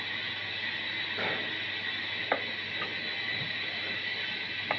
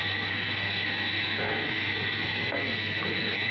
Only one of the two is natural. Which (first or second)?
first